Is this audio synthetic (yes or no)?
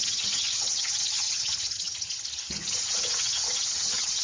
yes